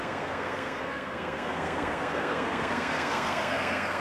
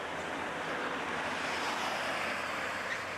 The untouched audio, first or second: second